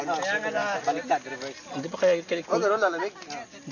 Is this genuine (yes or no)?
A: yes